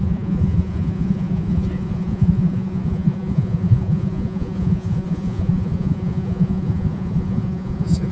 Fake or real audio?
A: fake